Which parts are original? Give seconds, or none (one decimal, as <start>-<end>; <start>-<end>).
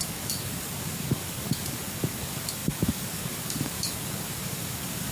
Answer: none